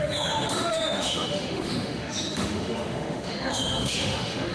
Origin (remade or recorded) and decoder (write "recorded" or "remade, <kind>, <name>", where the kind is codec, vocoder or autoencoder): remade, autoencoder, DAC-VAE